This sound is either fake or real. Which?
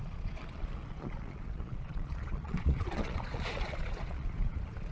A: fake